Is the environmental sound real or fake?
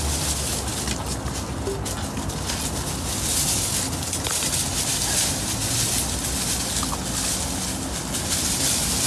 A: real